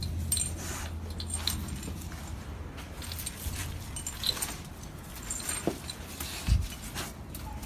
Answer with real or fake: real